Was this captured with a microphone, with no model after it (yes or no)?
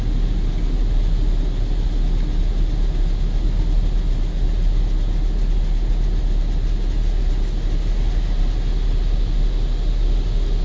yes